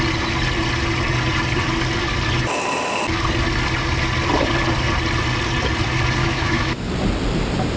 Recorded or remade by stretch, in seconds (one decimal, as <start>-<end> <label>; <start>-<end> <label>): 0.0-6.2 recorded; 6.2-6.9 remade; 6.9-7.8 recorded